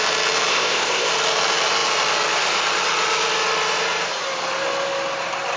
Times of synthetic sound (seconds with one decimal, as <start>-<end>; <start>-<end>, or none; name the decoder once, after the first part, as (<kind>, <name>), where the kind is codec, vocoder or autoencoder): 0.5-1.1 (codec, ZipCodec)